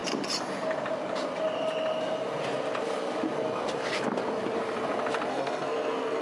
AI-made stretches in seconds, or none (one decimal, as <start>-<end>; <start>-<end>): 5.3-6.2